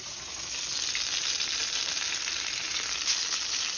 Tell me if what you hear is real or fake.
real